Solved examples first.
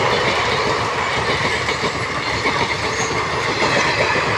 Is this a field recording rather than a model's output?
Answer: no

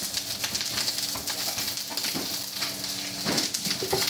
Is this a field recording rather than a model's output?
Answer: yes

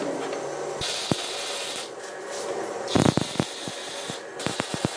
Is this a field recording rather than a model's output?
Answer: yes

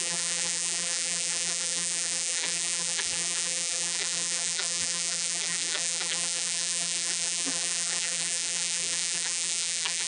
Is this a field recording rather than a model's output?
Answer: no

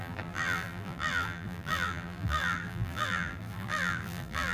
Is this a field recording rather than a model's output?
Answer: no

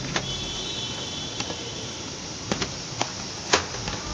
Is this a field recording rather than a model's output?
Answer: yes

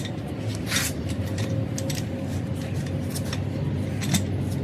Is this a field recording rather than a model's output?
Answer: yes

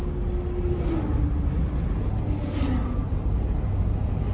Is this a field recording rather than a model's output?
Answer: yes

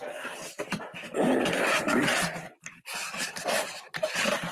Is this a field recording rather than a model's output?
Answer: no